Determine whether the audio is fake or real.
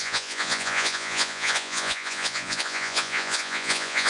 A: fake